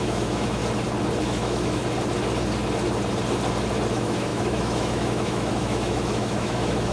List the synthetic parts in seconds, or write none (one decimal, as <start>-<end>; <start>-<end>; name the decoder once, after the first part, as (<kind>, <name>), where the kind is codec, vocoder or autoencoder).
0.0-0.6 (autoencoder, DAC-VAE); 1.2-1.8; 3.9-6.9